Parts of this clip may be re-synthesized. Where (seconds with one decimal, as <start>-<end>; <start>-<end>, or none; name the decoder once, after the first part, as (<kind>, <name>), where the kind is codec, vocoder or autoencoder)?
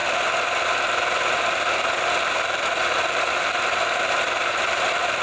2.2-5.2 (vocoder, BigVGAN v2)